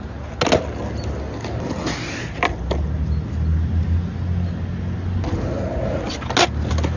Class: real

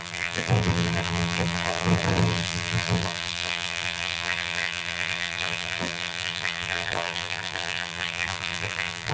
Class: fake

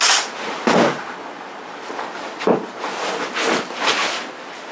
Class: real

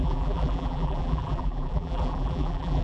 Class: fake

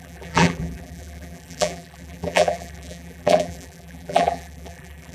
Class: fake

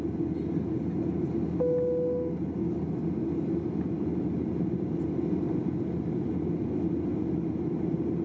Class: real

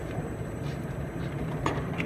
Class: fake